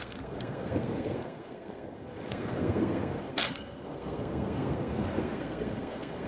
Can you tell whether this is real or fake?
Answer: fake